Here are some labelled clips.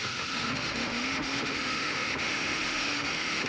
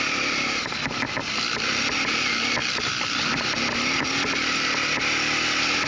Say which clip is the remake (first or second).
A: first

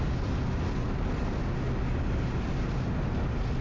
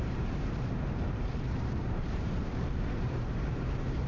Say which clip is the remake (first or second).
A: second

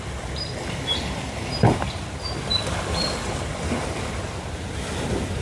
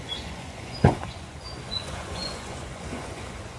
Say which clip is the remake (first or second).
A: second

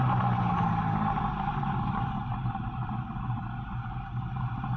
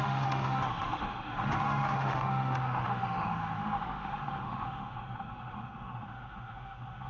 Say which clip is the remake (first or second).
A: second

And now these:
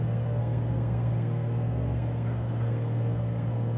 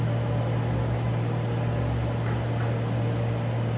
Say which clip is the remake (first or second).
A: first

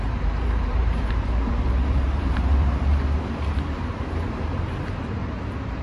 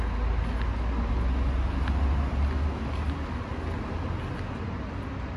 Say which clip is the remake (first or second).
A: first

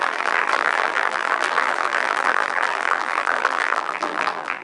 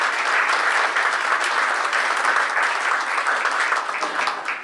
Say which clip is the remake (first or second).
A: first